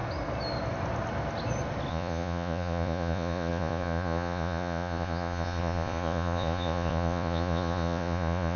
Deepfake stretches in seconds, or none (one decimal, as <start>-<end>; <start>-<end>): 1.9-8.6